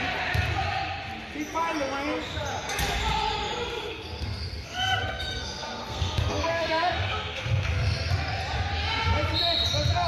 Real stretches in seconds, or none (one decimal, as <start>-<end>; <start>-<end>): 0.0-3.8; 8.1-10.1